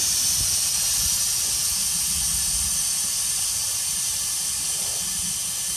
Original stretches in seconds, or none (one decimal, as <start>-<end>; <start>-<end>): 0.0-5.8